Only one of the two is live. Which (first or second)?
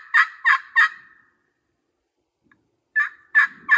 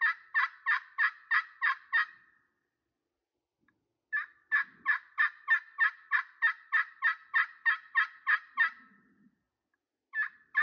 second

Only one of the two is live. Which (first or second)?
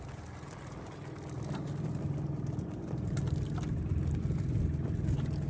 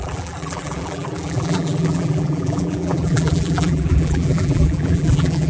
first